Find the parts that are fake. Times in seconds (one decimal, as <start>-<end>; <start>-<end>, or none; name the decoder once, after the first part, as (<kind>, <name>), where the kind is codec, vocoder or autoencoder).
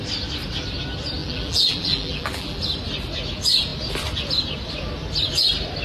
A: 1.2-2.6 (vocoder, BigVGAN v2)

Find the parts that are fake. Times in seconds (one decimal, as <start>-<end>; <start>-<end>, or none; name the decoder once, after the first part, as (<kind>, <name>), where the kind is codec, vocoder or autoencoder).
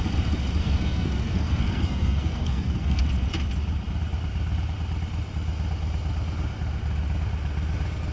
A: 0.6-3.0 (codec, SNAC)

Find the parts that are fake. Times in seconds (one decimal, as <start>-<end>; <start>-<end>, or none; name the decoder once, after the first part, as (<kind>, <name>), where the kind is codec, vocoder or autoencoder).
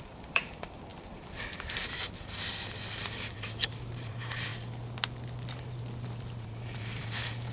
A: 0.0-4.5 (vocoder, BigVGAN v2); 5.8-7.5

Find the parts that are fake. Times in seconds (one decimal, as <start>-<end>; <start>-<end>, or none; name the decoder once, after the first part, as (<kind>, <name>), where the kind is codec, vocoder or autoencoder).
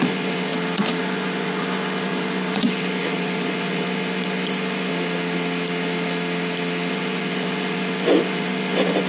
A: 0.0-0.5 (vocoder, Vocos); 1.0-4.9; 6.9-9.1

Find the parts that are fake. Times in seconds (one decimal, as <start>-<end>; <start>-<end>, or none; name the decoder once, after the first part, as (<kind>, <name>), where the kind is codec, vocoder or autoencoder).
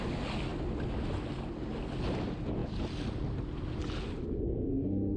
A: 4.7-5.2 (autoencoder, DAC-VAE)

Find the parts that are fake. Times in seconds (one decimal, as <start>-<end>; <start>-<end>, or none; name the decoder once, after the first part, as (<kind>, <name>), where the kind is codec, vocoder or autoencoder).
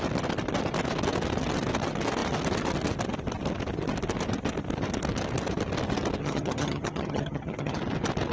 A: 6.2-7.8 (vocoder, HiFi-GAN)